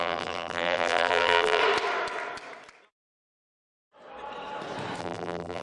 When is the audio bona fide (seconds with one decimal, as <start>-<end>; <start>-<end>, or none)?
1.6-5.0